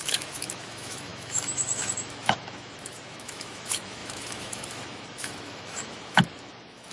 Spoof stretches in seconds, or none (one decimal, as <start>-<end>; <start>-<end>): 0.0-6.9